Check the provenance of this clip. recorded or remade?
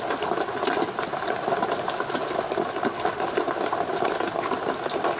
recorded